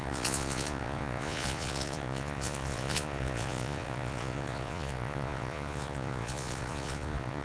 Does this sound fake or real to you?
fake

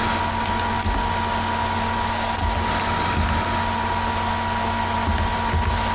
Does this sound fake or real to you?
real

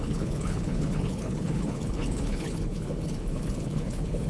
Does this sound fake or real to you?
fake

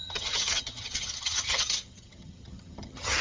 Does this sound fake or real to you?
fake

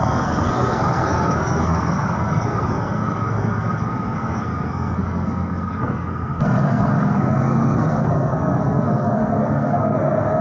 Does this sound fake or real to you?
fake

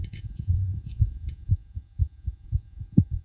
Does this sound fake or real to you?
fake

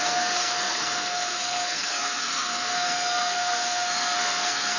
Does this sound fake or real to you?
fake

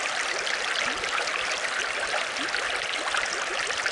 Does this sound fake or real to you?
real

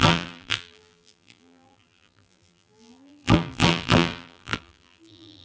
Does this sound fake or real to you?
fake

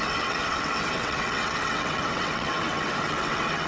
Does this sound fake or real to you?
fake